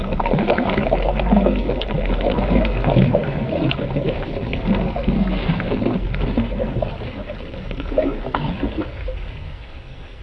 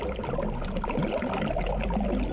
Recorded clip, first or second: second